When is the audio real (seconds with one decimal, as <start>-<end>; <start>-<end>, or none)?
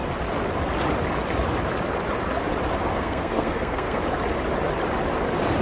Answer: 0.0-2.9; 4.0-5.6